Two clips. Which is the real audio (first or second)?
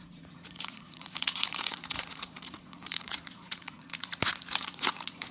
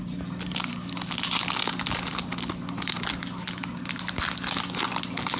second